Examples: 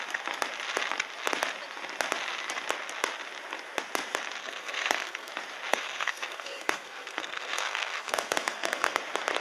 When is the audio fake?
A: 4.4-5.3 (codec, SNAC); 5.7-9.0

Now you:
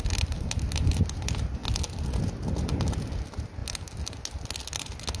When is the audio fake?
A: none

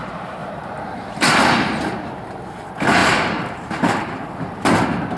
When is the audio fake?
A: 0.4-1.3 (vocoder, BigVGAN v2); 3.0-4.2

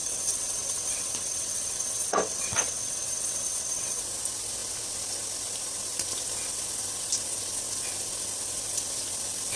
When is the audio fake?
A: 0.0-4.0 (vocoder, WaveNeXt)

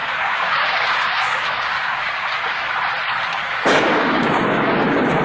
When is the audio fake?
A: 0.0-2.7 (codec, DAC); 3.3-5.2